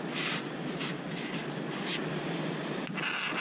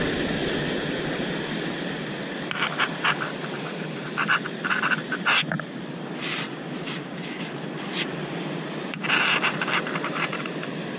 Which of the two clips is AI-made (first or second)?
second